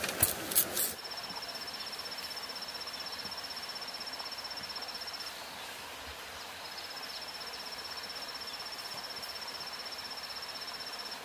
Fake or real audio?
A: real